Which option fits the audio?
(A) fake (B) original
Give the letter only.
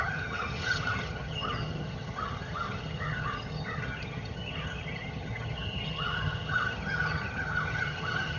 A